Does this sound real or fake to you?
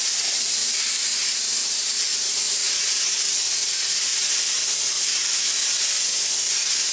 real